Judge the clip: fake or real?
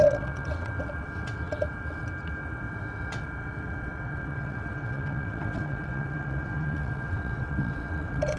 fake